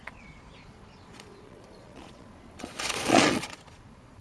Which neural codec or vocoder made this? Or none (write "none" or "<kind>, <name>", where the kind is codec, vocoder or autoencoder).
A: vocoder, Vocos